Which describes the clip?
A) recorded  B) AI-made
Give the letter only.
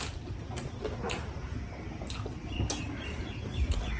A